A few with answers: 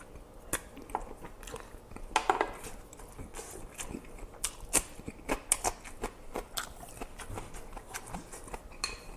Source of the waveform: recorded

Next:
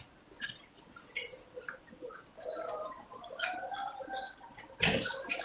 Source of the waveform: remade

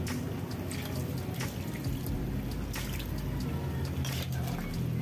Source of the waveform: recorded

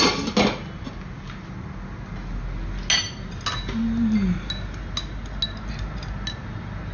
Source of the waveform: recorded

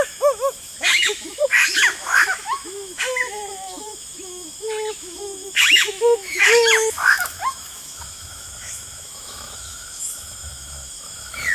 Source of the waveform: remade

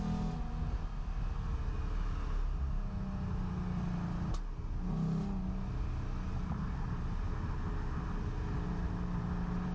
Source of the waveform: recorded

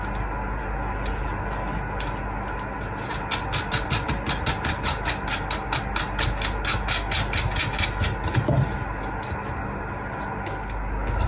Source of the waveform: recorded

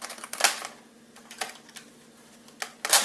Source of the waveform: recorded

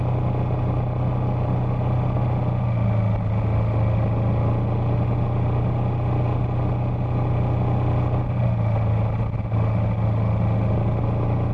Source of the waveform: recorded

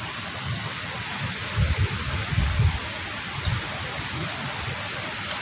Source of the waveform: remade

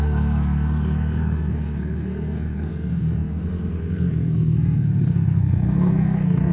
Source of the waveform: remade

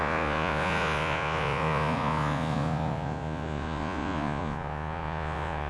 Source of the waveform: remade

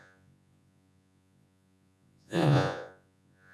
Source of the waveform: remade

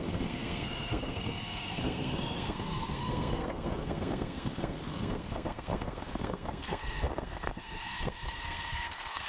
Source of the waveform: remade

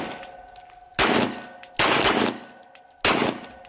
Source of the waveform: recorded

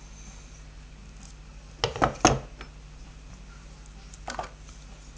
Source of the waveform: recorded